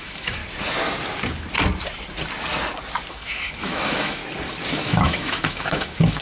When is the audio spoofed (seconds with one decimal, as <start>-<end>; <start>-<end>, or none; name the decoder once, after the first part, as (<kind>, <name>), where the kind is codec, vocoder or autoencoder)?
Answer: 0.0-0.4 (autoencoder, DAC-VAE); 3.1-4.2; 4.7-6.2